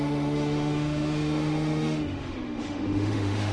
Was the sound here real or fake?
fake